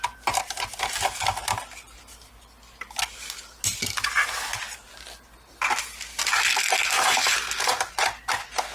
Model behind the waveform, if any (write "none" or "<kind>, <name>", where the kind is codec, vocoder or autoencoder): none